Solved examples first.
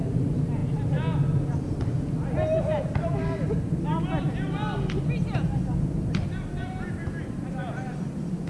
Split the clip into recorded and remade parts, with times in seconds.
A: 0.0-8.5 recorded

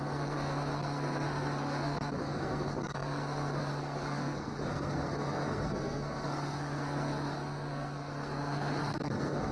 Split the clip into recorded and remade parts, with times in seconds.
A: 0.0-9.5 remade

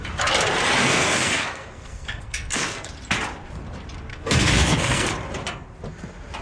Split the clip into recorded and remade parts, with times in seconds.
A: 0.0-0.8 recorded; 0.8-2.9 remade; 2.9-4.1 recorded; 4.1-5.1 remade; 5.1-6.4 recorded

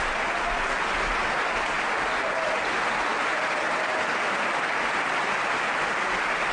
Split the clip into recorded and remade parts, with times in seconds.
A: 0.0-6.5 recorded